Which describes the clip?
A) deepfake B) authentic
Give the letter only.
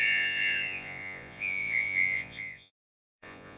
A